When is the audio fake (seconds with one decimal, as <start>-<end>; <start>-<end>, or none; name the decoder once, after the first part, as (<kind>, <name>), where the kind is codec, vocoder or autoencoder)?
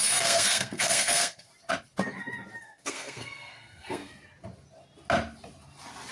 0.0-1.5 (codec, SNAC); 2.6-4.1